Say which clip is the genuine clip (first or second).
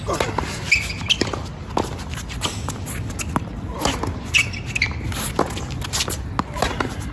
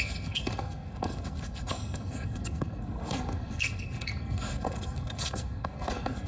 first